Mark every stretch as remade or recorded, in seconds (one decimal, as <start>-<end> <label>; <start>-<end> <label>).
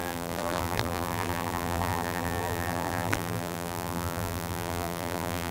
0.0-5.5 remade